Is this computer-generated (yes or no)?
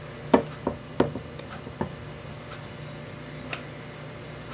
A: no